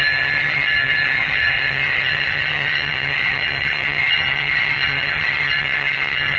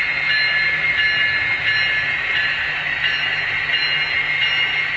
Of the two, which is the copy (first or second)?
first